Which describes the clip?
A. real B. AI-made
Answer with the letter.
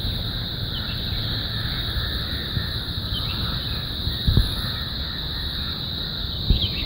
A